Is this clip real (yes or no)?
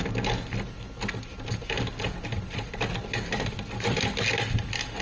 yes